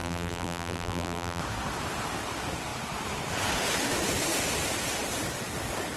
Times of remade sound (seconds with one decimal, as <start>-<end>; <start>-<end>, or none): 0.0-1.4